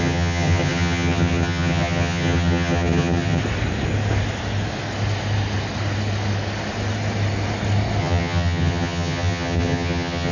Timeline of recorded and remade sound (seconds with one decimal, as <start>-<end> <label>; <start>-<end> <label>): 0.0-3.4 remade; 3.4-8.0 recorded; 8.0-10.3 remade